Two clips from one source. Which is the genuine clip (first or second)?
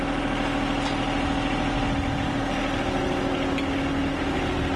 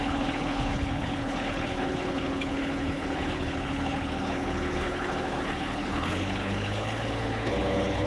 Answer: first